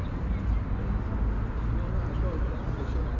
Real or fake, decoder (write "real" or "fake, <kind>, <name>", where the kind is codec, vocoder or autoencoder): real